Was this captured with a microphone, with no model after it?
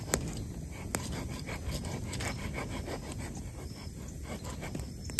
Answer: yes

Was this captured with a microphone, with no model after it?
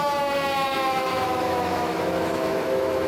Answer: no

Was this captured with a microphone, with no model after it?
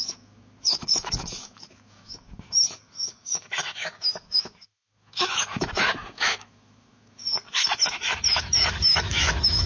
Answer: no